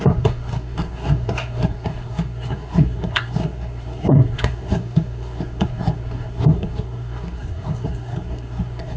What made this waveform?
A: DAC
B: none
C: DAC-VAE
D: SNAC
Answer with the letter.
D